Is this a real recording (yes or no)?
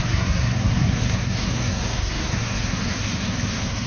no